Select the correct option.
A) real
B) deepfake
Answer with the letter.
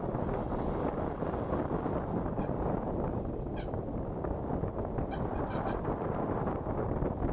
A